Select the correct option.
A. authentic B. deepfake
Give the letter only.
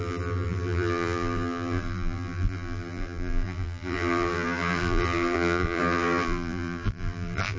B